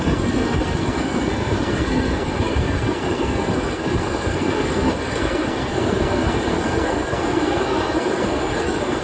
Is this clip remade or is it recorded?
remade